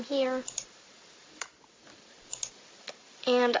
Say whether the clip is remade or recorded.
recorded